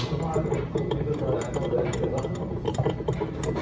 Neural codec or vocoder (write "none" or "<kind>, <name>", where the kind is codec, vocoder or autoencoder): none